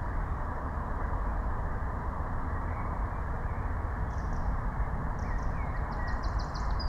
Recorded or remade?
remade